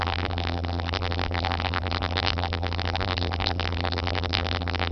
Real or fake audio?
fake